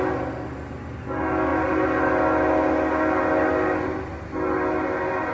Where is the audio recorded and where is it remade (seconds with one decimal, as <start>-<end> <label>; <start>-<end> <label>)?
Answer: 0.0-5.3 recorded